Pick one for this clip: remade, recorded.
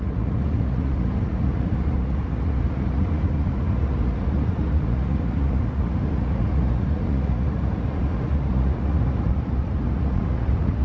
remade